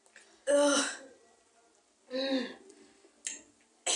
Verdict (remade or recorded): recorded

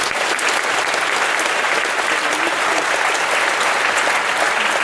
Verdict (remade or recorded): recorded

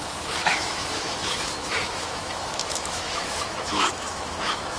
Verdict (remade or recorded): remade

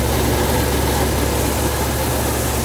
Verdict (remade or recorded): recorded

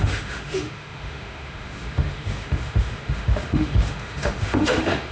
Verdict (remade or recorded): remade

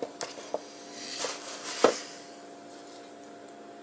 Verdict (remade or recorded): recorded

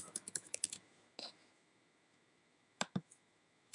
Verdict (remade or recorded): remade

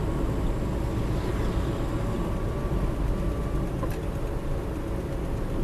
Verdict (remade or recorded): recorded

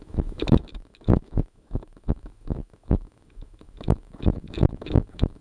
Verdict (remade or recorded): remade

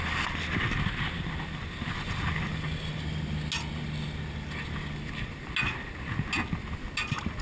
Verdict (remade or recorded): recorded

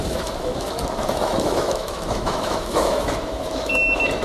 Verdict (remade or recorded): remade